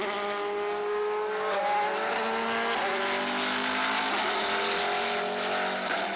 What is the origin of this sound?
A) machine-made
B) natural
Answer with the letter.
B